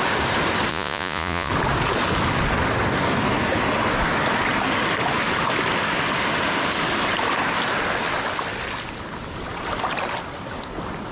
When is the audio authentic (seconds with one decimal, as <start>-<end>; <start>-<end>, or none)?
0.0-0.7; 1.5-11.1